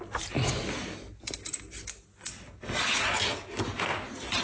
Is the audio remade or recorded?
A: recorded